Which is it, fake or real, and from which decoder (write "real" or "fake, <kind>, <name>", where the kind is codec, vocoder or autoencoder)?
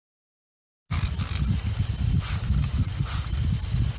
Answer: real